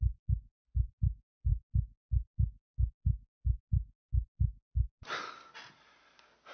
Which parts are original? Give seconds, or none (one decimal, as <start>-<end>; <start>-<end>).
0.0-6.5